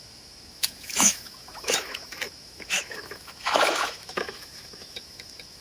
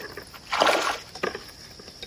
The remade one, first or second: first